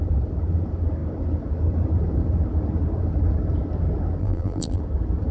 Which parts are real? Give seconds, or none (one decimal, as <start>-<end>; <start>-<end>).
0.0-4.2; 4.8-5.3